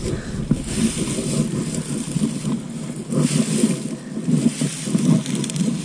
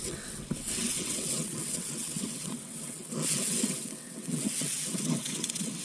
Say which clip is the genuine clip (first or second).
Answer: first